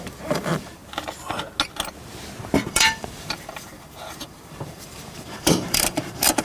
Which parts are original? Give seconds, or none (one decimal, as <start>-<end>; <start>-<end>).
0.8-2.7

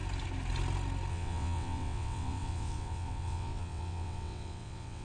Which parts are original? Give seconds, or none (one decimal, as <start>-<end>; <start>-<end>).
0.0-1.1